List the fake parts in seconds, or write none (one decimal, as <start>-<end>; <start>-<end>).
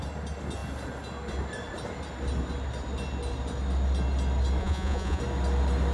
4.6-5.2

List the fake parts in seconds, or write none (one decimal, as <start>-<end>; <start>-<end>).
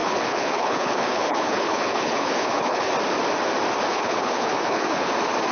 0.0-2.9; 3.9-5.1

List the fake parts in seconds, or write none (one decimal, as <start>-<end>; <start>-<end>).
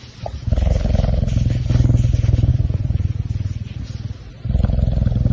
2.5-3.8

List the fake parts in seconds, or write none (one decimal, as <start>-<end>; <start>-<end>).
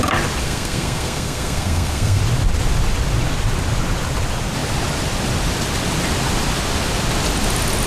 0.4-2.2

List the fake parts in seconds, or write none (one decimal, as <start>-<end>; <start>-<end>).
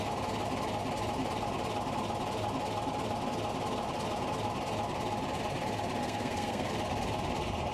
6.0-6.7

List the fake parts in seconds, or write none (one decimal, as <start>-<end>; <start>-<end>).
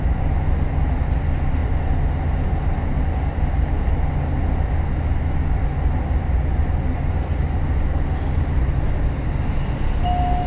none